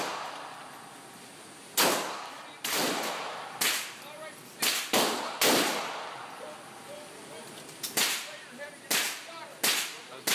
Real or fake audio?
real